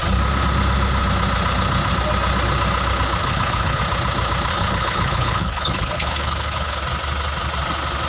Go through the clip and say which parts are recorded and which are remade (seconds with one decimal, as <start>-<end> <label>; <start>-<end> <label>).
0.0-3.2 recorded; 3.2-3.8 remade; 3.8-4.5 recorded; 4.5-6.8 remade; 6.8-8.1 recorded